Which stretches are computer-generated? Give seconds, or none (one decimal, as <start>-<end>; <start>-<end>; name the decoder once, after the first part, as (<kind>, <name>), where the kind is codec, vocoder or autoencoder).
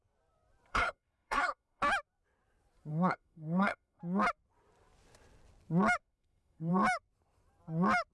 0.7-1.8 (codec, SNAC); 2.9-4.0; 6.0-6.7